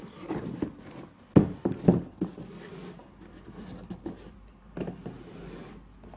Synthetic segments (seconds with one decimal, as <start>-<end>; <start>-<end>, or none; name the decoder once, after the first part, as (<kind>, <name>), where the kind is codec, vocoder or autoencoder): none